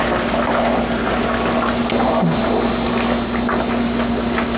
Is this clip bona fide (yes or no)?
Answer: yes